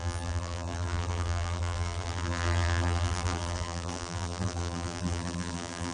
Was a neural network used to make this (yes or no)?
yes